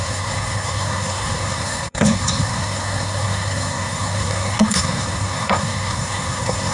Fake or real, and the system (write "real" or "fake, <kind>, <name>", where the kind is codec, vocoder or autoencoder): fake, codec, SNAC